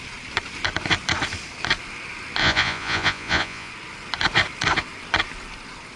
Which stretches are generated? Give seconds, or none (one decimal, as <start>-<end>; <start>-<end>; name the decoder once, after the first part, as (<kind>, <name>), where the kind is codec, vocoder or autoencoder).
2.4-3.7 (vocoder, Vocos)